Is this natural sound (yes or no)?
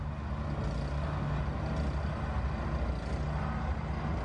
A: yes